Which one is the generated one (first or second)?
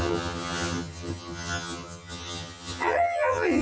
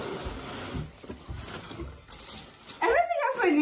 first